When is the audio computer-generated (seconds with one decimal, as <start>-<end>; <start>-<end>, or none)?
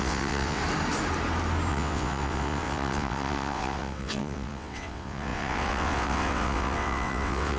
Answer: 0.0-0.6; 1.7-7.6